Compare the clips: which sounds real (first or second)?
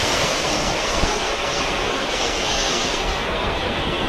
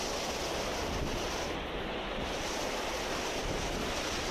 second